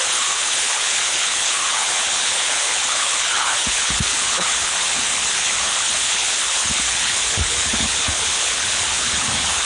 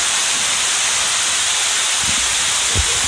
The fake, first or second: first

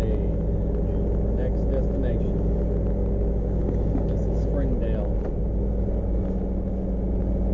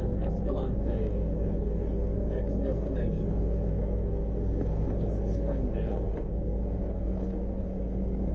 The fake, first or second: second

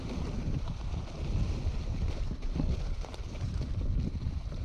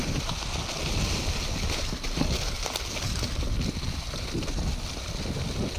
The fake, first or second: first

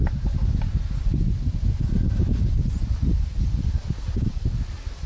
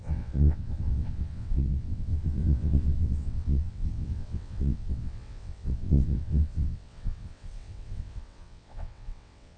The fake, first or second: second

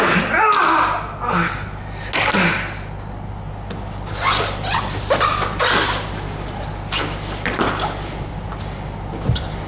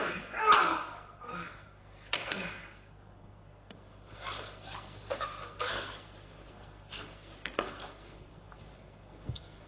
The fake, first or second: second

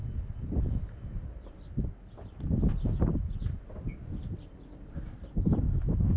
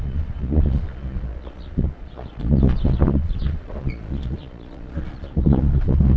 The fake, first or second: second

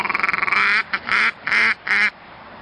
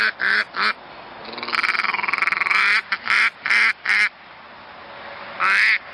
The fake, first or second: first